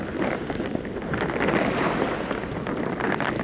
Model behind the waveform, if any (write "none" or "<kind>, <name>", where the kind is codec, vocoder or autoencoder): none